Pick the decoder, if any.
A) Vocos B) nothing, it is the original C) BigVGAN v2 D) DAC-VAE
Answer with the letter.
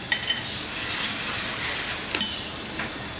B